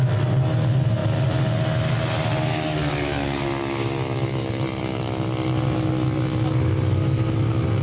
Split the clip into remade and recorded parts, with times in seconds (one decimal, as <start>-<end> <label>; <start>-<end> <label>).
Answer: 0.0-7.8 recorded